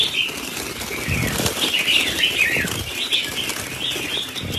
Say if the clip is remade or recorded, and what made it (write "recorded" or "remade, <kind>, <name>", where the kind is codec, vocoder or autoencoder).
recorded